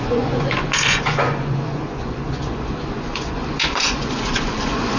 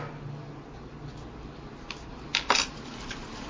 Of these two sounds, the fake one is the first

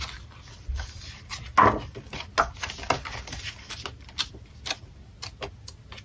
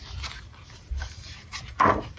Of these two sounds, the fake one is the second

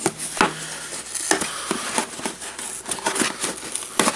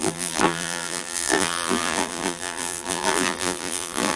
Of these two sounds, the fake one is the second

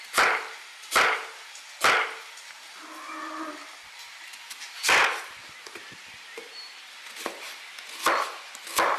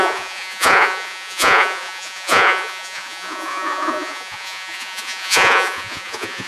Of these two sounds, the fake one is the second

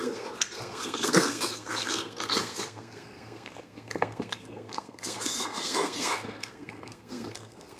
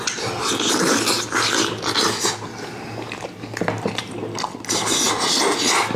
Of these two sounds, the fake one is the first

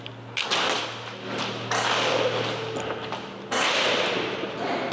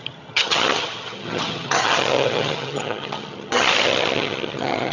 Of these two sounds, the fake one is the second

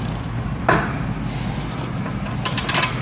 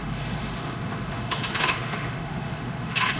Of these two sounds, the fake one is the second